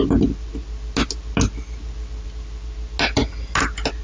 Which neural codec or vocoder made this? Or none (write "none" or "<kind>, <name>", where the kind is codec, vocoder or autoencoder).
none